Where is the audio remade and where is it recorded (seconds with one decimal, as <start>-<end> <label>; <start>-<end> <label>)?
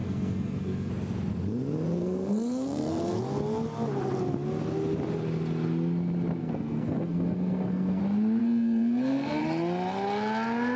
0.0-0.9 remade; 0.9-2.0 recorded; 2.0-3.2 remade; 3.2-6.4 recorded; 6.4-8.0 remade; 8.0-8.4 recorded; 8.4-9.4 remade; 9.4-10.8 recorded